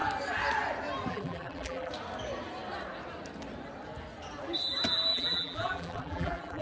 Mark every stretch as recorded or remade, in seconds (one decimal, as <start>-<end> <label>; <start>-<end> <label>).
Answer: 0.0-1.1 recorded; 1.1-1.9 remade; 1.9-5.1 recorded; 5.1-6.6 remade